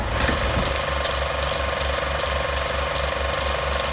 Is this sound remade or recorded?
recorded